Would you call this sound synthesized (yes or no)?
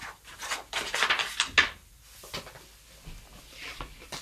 no